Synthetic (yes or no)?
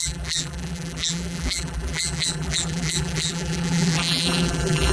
yes